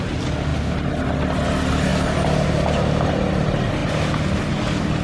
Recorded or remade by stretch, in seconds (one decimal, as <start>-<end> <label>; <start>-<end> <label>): 0.0-5.0 recorded